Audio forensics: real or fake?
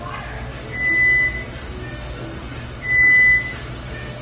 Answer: real